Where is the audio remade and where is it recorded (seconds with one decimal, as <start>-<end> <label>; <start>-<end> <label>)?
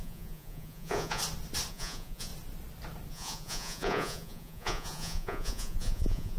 0.0-1.2 remade; 1.2-1.7 recorded; 1.7-2.3 remade; 2.3-3.1 recorded; 3.1-6.4 remade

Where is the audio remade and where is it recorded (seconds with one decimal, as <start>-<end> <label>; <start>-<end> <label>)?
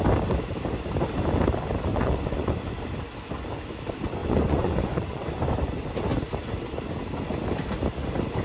0.0-1.9 recorded; 1.9-2.8 remade; 2.8-4.2 recorded; 4.2-5.3 remade; 5.3-8.4 recorded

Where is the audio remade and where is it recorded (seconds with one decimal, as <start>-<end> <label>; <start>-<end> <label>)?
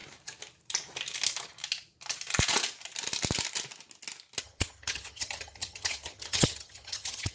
0.0-4.4 recorded; 4.4-7.3 remade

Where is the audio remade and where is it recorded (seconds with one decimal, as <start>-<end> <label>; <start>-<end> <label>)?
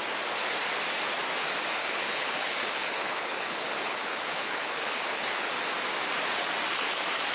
0.0-1.8 recorded; 1.8-5.5 remade; 5.5-6.7 recorded; 6.7-7.3 remade